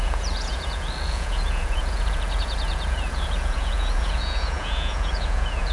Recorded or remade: remade